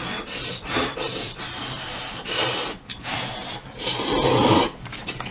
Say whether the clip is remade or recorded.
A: remade